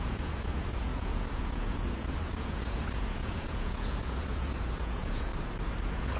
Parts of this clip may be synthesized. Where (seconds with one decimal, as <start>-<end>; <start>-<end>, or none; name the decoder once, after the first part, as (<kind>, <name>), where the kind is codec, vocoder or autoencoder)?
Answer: 0.0-5.3 (vocoder, Vocos); 5.8-6.2